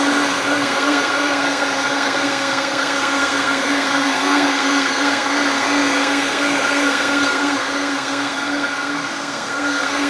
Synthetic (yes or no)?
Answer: yes